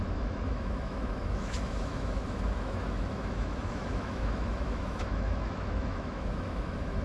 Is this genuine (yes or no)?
no